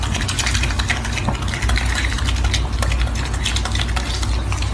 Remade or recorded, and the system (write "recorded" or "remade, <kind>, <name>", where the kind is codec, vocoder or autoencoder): recorded